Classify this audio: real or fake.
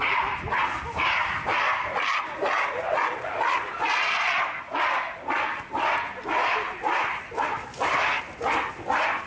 real